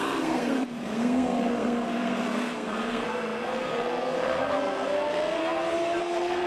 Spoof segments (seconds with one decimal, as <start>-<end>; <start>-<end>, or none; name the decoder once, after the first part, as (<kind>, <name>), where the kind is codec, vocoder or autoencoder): 0.0-5.4 (codec, SNAC); 6.0-6.5